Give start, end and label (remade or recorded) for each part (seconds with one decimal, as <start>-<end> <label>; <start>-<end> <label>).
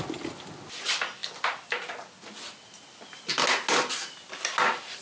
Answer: 0.0-5.0 recorded